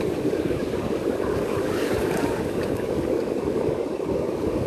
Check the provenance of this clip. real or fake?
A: fake